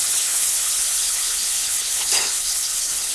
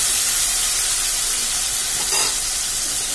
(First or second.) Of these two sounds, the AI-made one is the first